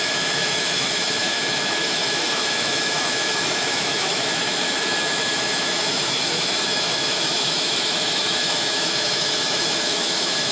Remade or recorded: remade